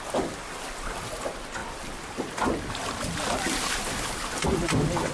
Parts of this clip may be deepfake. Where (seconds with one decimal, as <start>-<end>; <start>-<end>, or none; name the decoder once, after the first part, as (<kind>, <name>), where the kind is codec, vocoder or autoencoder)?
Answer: none

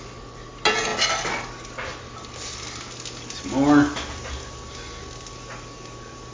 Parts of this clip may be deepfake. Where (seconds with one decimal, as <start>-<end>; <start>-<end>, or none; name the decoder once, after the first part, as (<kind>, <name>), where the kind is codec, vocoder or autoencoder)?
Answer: none

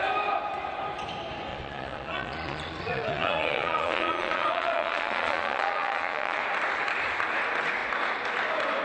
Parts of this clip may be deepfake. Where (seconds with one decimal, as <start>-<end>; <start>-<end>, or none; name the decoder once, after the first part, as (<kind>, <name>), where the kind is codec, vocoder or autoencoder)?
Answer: 1.5-6.4 (vocoder, Vocos)

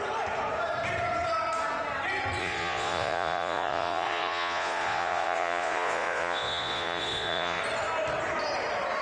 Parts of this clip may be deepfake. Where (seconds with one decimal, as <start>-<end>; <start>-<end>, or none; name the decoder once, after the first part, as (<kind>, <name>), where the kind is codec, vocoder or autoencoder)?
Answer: 2.4-7.6 (vocoder, Vocos)

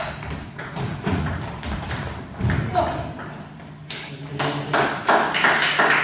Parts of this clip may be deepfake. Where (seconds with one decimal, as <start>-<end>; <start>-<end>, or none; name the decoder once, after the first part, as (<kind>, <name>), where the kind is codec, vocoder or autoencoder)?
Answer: 0.4-1.4 (vocoder, Vocos)